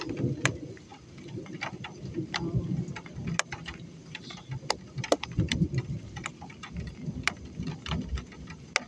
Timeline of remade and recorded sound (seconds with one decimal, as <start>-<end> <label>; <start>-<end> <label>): 0.0-8.9 recorded